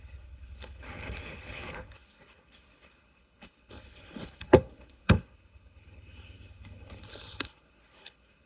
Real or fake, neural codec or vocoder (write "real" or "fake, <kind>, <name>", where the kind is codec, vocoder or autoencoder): fake, codec, HILCodec